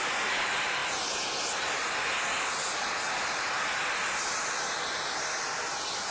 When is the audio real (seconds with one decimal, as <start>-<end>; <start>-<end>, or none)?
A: 0.0-6.1